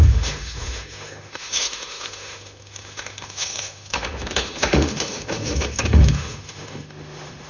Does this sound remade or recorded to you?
remade